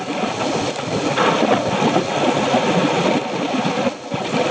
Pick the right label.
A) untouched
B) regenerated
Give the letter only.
A